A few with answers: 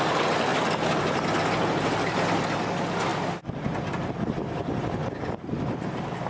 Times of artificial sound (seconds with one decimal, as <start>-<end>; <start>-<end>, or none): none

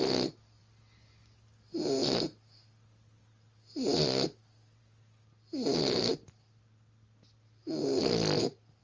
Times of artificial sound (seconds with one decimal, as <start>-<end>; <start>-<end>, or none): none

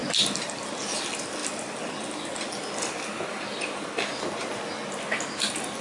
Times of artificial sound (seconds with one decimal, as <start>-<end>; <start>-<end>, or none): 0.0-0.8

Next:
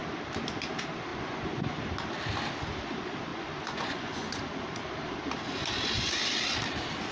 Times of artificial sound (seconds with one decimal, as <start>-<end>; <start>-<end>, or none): 1.1-1.7; 3.3-4.4

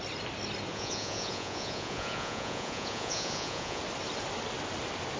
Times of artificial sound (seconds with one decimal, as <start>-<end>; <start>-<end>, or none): 0.7-3.8

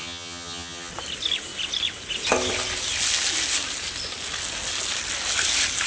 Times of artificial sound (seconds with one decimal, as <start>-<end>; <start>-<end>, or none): 0.0-0.9

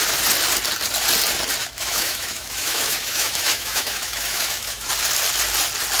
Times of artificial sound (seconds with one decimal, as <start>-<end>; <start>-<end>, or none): 1.6-4.9